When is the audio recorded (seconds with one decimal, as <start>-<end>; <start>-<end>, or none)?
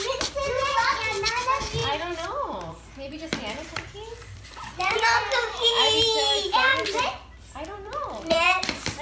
0.0-1.8; 5.7-6.7